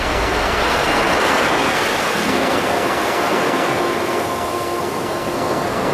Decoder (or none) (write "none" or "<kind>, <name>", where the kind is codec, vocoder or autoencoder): codec, SNAC